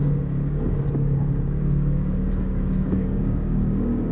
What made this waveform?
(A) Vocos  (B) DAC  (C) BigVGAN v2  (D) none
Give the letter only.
B